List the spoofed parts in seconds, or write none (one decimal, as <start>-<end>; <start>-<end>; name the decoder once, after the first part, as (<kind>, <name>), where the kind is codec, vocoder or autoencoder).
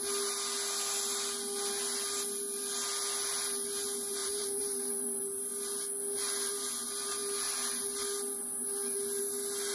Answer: 4.2-5.5 (vocoder, BigVGAN v2)